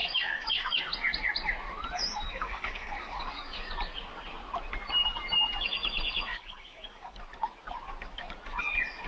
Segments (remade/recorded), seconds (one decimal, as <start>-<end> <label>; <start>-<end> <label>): 0.0-0.7 remade; 0.7-2.3 recorded; 2.3-3.7 remade; 3.7-6.3 recorded; 6.3-7.2 remade; 7.2-9.1 recorded